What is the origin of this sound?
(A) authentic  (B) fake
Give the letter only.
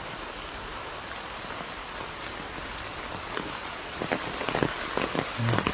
A